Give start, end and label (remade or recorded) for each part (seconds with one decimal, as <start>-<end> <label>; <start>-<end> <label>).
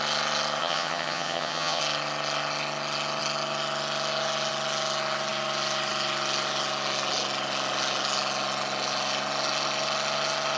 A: 0.0-0.6 recorded; 0.6-1.8 remade; 1.8-10.6 recorded